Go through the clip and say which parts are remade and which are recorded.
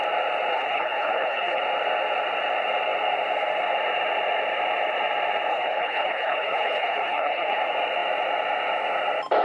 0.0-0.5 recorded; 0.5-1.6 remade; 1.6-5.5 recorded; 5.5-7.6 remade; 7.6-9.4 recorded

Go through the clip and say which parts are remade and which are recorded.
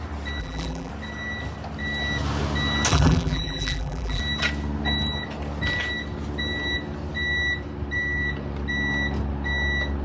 0.0-0.4 recorded; 0.4-0.9 remade; 0.9-2.9 recorded; 2.9-4.2 remade; 4.2-10.0 recorded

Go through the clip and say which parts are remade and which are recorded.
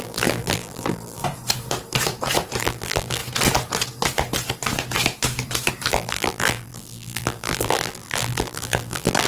0.0-1.2 remade; 1.2-2.6 recorded; 2.6-3.2 remade; 3.2-5.9 recorded; 5.9-9.3 remade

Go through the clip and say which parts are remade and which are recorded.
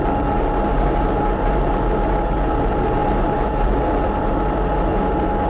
0.0-0.7 recorded; 0.7-1.5 remade; 1.5-3.0 recorded; 3.0-3.8 remade; 3.8-5.5 recorded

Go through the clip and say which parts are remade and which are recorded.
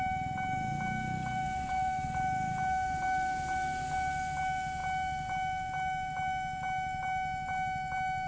0.0-8.3 recorded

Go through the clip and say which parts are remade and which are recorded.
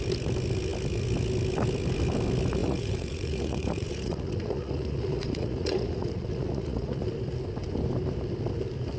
0.0-2.6 recorded; 2.6-7.1 remade; 7.1-9.0 recorded